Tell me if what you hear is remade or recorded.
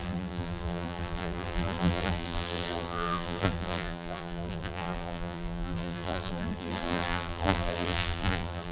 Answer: remade